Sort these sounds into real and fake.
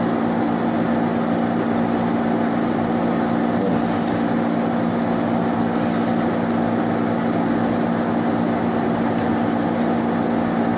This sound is real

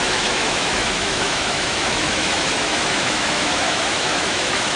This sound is fake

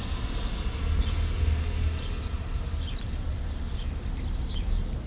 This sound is real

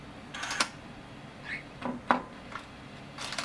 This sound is real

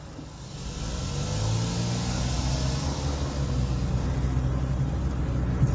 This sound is real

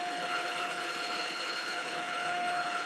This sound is fake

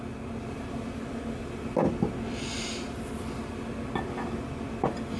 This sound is real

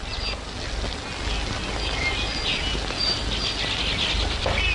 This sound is real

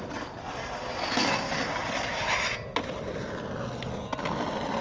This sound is real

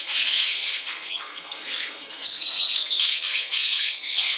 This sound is fake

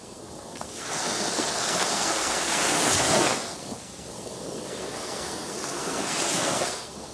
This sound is fake